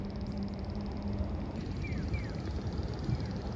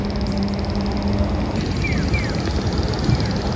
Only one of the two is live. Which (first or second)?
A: second